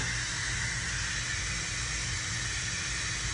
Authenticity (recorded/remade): recorded